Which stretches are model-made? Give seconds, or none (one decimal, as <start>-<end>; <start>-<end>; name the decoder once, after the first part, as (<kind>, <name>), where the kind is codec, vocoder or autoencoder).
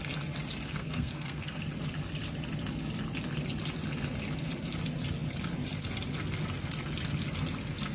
0.8-1.6 (codec, SNAC)